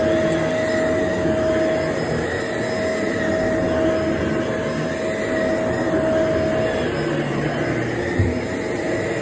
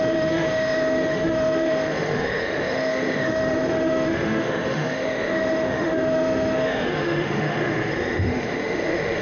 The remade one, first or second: second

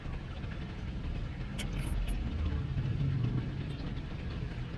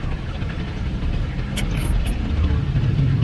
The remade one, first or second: second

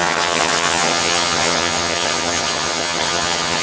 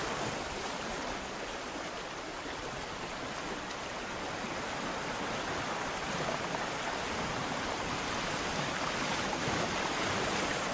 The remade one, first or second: first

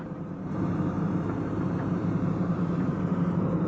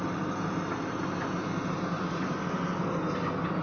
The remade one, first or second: first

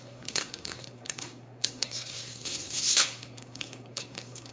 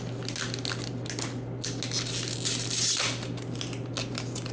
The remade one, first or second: first